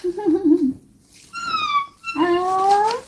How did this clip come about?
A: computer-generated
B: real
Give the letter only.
B